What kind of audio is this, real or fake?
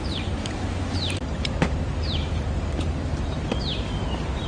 fake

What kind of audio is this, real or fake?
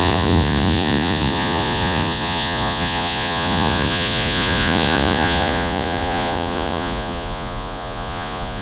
fake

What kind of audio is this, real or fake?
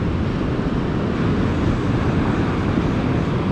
real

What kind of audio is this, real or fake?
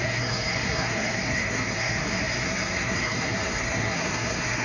fake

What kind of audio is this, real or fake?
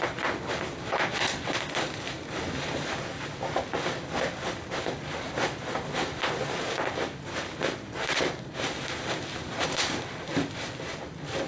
fake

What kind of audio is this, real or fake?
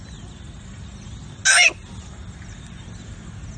real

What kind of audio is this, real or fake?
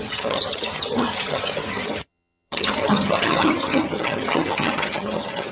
fake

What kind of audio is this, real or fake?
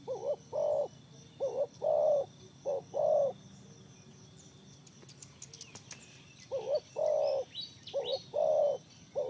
real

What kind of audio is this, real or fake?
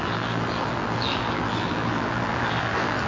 fake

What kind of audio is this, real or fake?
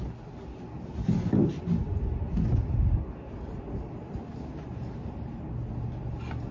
real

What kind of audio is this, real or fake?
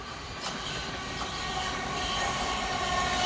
real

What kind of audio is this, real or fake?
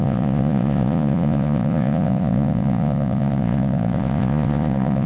fake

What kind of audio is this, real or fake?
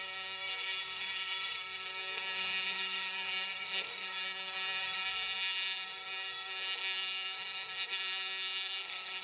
fake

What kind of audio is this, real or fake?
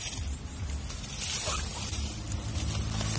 real